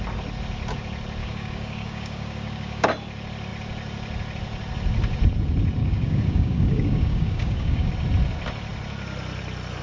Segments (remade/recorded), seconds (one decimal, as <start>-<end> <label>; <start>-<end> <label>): 0.0-1.2 recorded; 1.2-2.9 remade; 2.9-5.8 recorded; 5.8-7.9 remade; 7.9-9.8 recorded